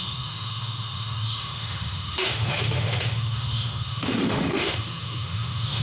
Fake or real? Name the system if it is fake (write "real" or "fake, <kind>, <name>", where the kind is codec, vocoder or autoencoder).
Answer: fake, autoencoder, DAC-VAE